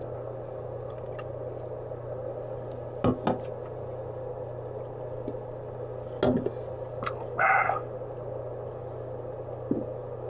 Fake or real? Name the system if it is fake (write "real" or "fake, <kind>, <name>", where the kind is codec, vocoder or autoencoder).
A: real